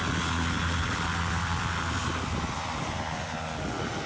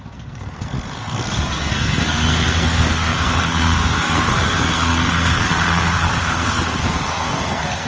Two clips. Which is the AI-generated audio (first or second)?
second